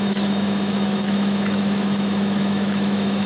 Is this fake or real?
fake